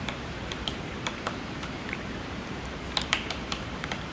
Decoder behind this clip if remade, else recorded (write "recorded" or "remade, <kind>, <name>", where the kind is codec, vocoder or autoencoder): remade, vocoder, BigVGAN v2